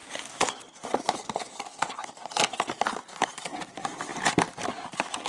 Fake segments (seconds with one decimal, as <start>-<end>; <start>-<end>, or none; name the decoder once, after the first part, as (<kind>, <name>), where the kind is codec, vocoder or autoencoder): 0.0-2.2 (codec, DAC); 3.1-5.3